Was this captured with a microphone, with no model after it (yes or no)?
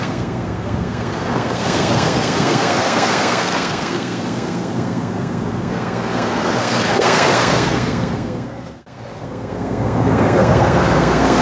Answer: no